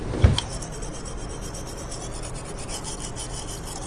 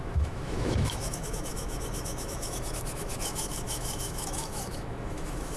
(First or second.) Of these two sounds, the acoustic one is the first